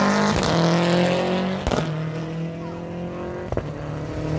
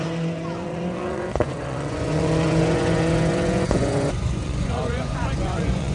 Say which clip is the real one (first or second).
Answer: first